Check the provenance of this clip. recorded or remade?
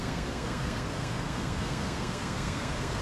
remade